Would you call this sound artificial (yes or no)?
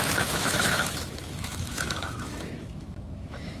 yes